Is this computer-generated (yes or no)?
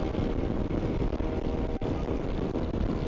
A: no